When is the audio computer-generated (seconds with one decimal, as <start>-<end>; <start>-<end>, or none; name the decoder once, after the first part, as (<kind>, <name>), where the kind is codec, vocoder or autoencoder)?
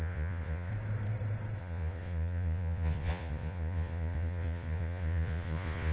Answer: 0.0-0.7 (vocoder, Vocos); 1.6-5.9